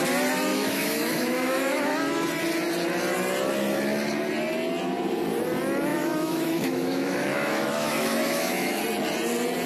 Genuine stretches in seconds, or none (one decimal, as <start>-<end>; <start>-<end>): 0.0-0.5; 1.9-5.9; 8.8-9.7